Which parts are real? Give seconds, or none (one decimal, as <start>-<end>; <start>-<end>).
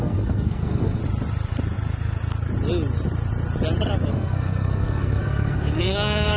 1.0-4.1